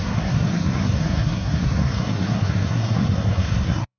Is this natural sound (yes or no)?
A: no